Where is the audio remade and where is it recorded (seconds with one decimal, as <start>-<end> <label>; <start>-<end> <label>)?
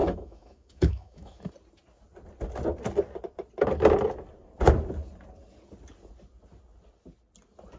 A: 0.0-1.5 remade; 1.5-7.8 recorded